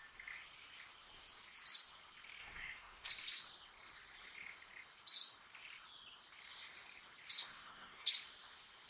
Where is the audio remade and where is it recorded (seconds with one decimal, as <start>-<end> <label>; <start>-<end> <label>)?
0.0-2.4 recorded; 2.4-3.1 remade; 3.1-7.4 recorded; 7.4-8.1 remade; 8.1-8.9 recorded